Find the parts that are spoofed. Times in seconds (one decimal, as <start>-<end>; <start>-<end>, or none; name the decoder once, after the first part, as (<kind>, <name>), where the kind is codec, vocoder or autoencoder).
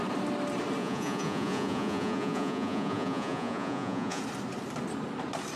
0.8-4.2 (vocoder, Vocos)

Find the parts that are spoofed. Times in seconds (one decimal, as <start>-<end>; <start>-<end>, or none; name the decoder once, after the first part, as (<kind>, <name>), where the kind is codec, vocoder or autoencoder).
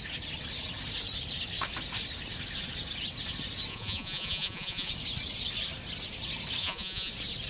3.7-4.9 (vocoder, Vocos); 6.6-7.1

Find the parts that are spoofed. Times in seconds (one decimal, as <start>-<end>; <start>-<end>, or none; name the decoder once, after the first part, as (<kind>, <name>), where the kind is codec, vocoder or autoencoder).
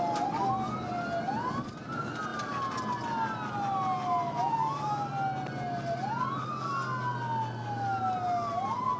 none